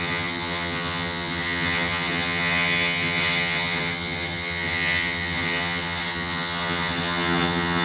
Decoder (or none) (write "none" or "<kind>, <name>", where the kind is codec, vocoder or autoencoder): vocoder, HiFi-GAN